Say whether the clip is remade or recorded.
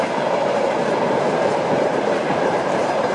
remade